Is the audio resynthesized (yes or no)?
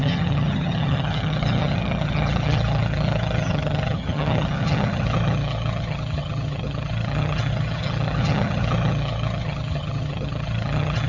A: yes